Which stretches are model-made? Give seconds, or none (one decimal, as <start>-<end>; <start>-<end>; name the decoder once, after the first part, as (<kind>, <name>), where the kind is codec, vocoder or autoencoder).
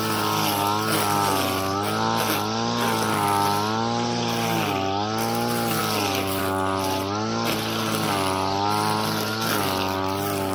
none